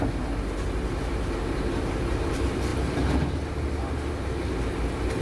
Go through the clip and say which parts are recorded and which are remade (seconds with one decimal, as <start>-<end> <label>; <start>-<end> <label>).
0.0-5.2 recorded